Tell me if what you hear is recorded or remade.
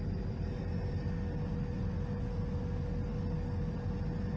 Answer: recorded